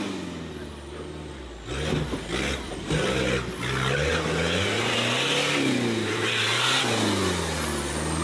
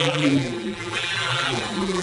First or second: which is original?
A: first